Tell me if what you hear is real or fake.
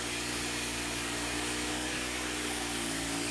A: fake